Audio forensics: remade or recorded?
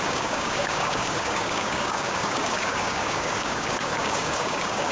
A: remade